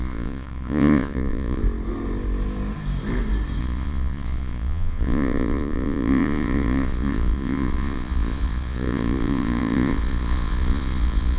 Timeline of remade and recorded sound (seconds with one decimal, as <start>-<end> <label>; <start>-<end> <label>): 0.0-1.6 remade; 1.6-3.6 recorded; 3.6-11.4 remade